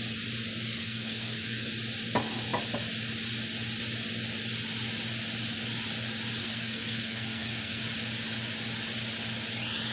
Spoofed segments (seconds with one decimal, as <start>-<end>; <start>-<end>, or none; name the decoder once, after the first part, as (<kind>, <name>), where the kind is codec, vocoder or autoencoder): 0.8-1.7 (codec, SNAC); 6.4-7.8